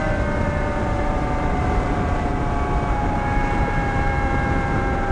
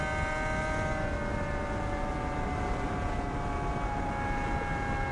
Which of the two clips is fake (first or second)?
first